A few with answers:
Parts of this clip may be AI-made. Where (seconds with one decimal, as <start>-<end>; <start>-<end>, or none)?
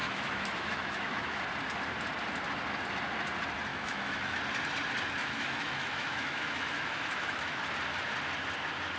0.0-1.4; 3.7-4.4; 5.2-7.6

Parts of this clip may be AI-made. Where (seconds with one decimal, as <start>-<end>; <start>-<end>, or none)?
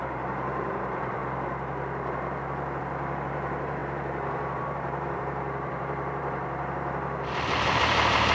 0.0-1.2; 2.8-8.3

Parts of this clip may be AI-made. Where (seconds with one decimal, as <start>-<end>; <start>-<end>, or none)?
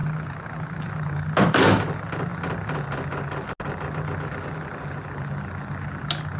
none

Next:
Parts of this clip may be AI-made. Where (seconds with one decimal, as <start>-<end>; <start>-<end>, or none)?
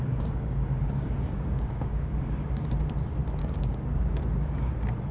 0.8-2.7; 3.4-4.2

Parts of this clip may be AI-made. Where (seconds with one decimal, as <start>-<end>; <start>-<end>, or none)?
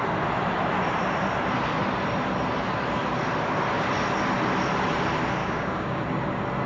5.4-6.0